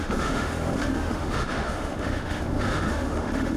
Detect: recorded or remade remade